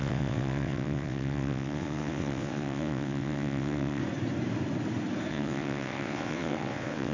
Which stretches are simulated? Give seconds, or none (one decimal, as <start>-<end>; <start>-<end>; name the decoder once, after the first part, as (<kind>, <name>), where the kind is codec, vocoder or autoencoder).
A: 0.0-4.0 (vocoder, WaveNeXt); 5.3-7.1